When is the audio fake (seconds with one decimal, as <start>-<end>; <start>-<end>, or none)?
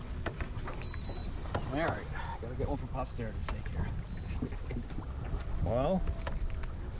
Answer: none